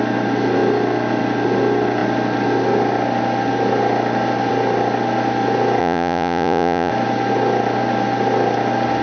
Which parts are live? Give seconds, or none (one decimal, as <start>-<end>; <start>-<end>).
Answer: 0.0-5.8; 6.9-9.0